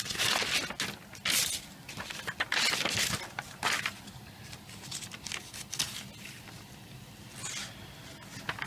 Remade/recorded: recorded